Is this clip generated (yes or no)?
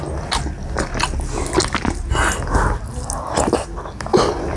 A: no